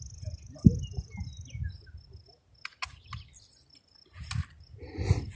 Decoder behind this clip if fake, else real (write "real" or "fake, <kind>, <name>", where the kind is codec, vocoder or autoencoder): real